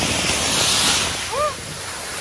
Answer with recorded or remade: recorded